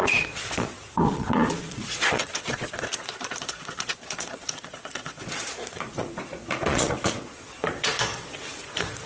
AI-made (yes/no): yes